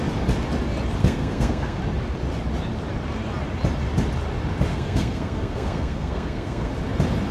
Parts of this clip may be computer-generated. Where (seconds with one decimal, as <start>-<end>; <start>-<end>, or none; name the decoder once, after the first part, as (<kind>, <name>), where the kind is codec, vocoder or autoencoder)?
1.0-1.8 (codec, SNAC); 4.7-6.7